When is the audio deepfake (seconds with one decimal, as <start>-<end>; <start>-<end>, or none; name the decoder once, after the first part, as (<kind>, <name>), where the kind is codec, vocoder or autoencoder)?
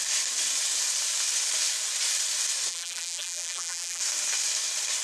2.7-4.0 (vocoder, BigVGAN v2)